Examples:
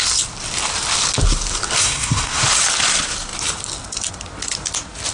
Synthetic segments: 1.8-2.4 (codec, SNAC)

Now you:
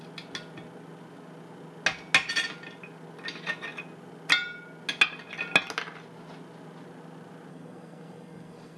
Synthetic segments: 7.5-8.8 (codec, SNAC)

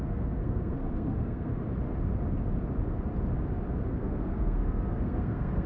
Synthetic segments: 0.0-1.5 (codec, SNAC); 3.9-5.7

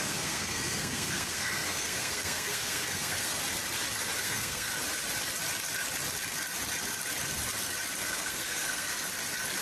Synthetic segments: 0.0-3.4 (codec, SNAC); 4.2-4.7; 8.0-8.9

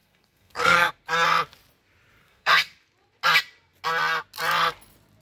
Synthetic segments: 0.0-0.9 (codec, SNAC); 2.2-2.8

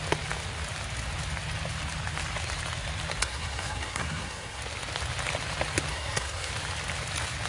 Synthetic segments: 3.2-4.6 (codec, SNAC); 5.9-6.5

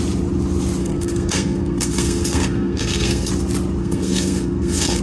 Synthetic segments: 0.8-3.3 (codec, SNAC); 3.8-5.0

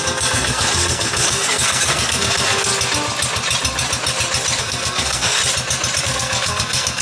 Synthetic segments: 0.0-2.7 (codec, SNAC); 4.6-5.4; 6.0-7.0